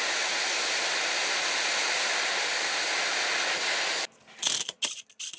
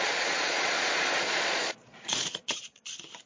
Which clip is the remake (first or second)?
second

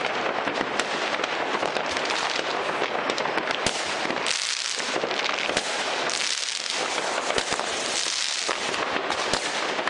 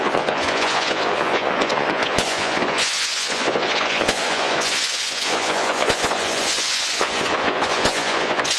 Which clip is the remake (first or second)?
second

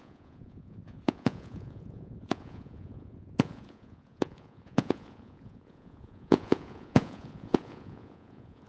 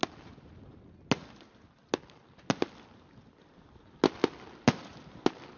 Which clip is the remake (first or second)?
first